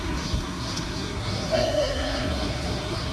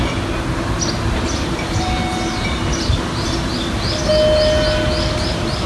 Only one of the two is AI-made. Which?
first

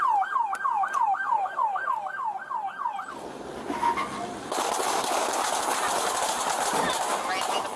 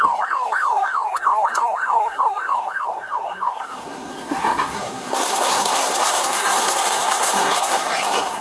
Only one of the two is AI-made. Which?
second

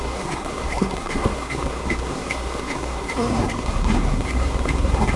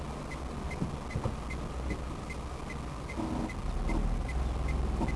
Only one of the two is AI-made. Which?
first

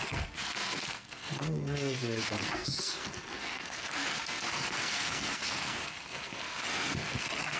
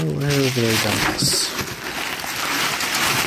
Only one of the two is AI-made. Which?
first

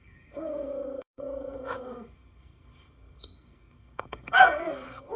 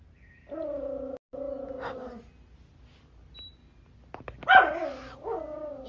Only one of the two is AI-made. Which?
first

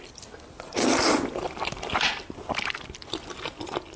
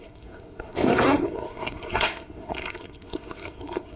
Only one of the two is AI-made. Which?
second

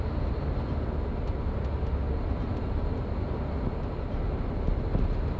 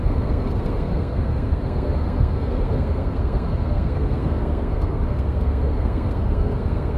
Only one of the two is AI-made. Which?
second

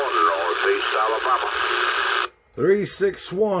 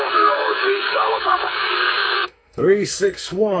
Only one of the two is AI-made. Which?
second